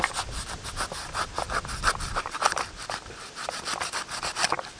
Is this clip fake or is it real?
fake